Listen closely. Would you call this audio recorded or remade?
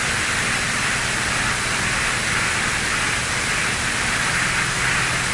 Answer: recorded